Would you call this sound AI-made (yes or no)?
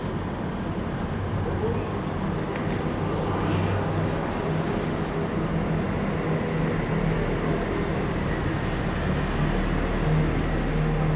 no